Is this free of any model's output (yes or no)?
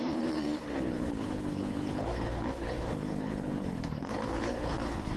no